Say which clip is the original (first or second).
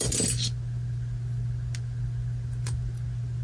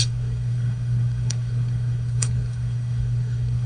first